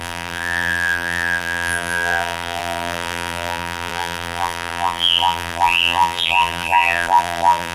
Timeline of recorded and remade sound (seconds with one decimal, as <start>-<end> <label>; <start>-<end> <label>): 0.0-7.7 remade